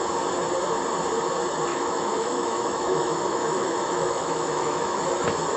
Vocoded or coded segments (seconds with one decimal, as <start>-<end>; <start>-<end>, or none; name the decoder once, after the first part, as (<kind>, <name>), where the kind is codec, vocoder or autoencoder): 1.7-5.0 (autoencoder, DAC-VAE)